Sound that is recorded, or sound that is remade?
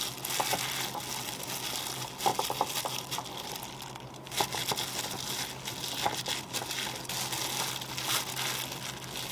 recorded